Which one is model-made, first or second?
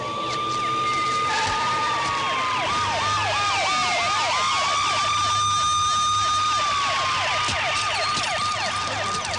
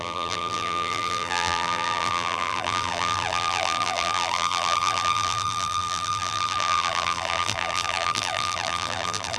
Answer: second